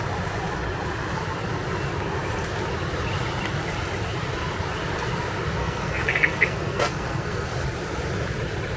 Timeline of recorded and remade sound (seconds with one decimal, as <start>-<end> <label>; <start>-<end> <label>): 0.0-5.6 recorded; 5.6-7.5 remade; 7.5-8.8 recorded